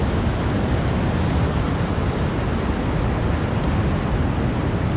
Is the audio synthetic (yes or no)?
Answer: no